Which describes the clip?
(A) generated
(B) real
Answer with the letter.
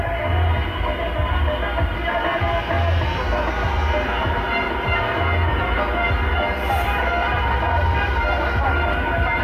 B